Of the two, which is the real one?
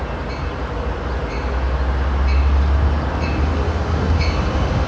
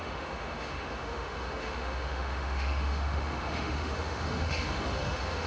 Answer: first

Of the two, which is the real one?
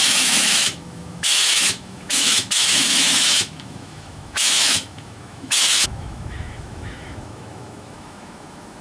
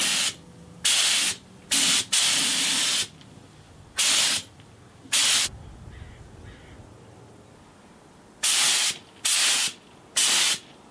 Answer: second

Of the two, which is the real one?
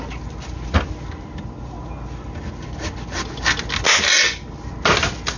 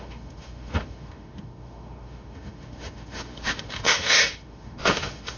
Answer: first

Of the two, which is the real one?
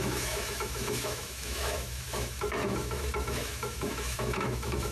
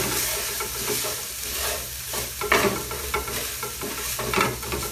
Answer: second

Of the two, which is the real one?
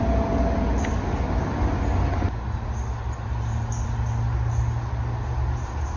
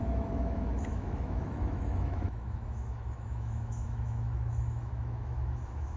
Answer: first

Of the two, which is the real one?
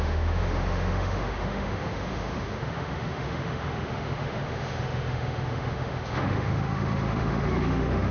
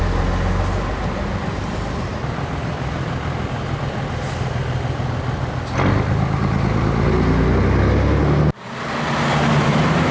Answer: second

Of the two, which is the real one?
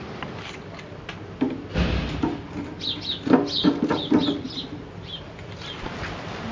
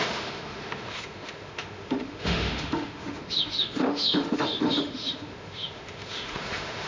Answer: first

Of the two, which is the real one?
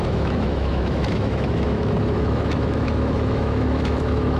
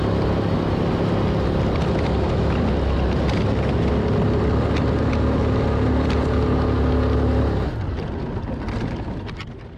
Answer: second